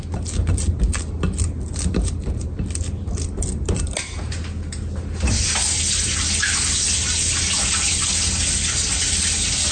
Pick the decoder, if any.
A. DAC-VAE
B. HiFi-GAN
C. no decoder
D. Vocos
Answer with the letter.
C